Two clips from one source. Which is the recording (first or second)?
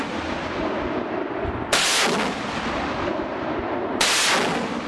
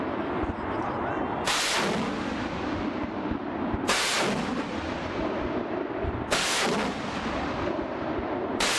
first